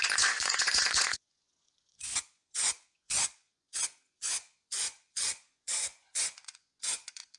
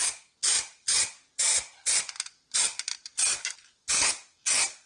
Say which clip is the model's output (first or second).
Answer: first